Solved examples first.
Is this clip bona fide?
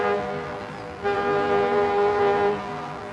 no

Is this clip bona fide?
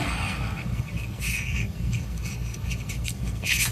no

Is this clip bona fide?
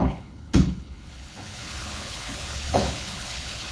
no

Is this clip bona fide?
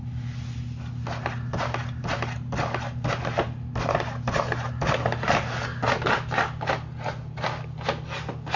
yes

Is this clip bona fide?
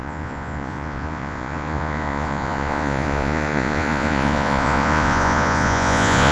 no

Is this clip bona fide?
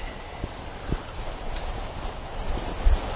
yes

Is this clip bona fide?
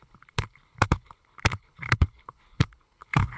no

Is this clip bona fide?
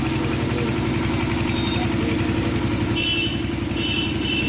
yes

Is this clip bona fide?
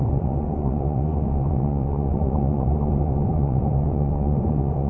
no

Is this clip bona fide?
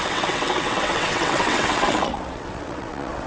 no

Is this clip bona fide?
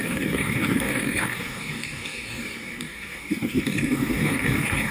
no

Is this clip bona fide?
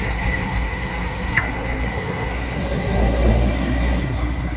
no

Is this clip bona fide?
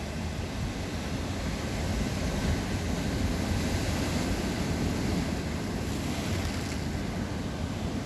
yes